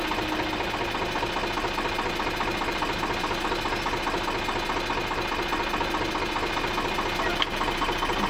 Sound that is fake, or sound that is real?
real